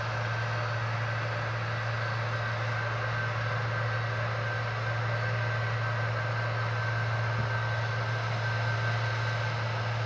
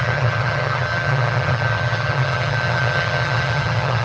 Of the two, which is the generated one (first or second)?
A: second